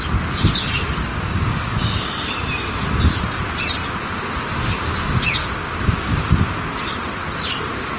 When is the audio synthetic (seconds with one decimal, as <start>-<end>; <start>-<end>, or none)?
1.1-2.3; 5.4-6.2